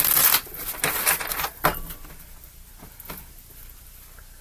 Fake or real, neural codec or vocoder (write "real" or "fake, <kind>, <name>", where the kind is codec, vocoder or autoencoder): real